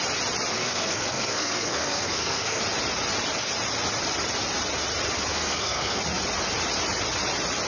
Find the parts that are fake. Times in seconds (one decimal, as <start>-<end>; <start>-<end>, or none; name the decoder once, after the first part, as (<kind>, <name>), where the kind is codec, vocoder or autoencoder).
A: 0.5-2.6 (codec, SNAC); 5.3-6.0